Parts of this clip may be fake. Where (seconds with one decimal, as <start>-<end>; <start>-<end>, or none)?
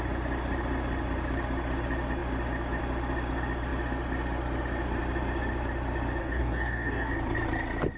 6.2-7.1